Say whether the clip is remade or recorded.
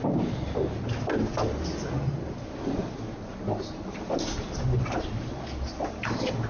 recorded